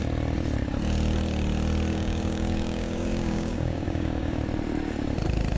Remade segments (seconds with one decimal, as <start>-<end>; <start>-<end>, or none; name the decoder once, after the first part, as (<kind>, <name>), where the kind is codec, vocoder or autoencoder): 1.9-4.4 (codec, DAC)